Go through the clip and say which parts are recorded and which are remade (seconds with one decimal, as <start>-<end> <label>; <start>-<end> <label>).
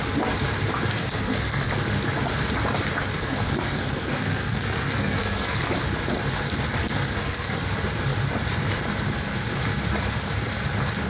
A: 0.0-0.9 recorded; 0.9-1.7 remade; 1.7-3.1 recorded; 3.1-5.6 remade; 5.6-6.8 recorded; 6.8-7.6 remade; 7.6-11.1 recorded